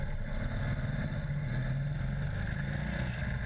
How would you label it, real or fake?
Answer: real